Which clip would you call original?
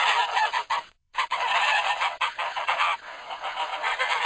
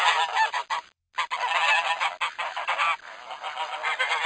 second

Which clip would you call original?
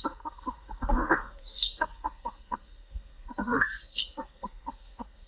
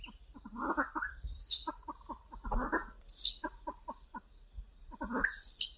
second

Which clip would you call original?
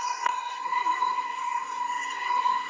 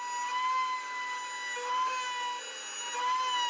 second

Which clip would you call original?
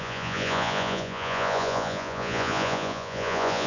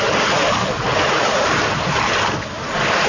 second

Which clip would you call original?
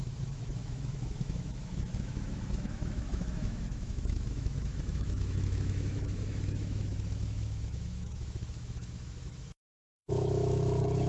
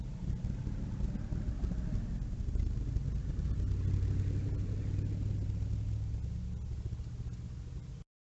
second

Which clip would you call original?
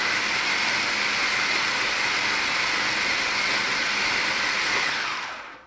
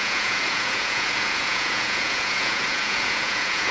first